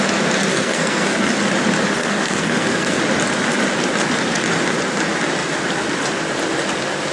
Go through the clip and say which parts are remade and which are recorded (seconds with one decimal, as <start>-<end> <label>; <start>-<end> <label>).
0.0-0.5 recorded; 0.5-1.3 remade; 1.3-2.0 recorded; 2.0-3.0 remade; 3.0-7.1 recorded